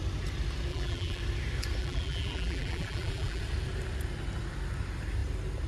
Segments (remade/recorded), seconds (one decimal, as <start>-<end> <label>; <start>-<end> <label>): 0.0-0.7 recorded; 0.7-1.2 remade; 1.2-1.8 recorded; 1.8-3.4 remade; 3.4-5.7 recorded